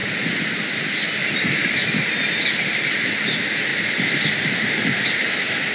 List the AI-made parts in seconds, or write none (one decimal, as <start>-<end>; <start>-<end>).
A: none